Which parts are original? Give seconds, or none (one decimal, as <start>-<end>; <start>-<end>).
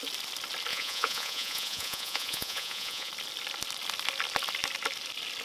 0.0-0.7; 3.1-5.4